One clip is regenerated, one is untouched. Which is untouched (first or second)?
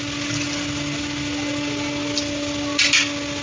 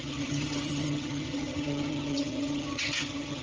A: first